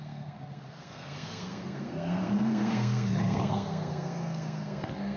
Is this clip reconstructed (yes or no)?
yes